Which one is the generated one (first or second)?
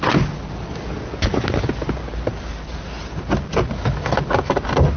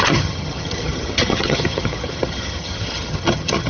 second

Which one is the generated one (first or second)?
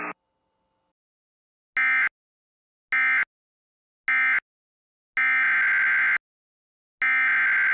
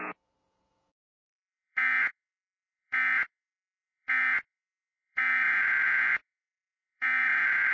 second